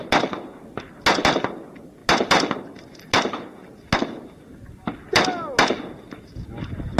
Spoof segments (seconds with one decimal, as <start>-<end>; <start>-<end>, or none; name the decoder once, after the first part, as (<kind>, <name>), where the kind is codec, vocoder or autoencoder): none